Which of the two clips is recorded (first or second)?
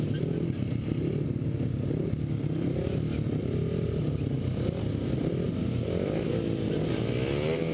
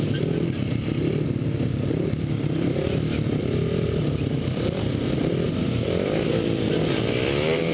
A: first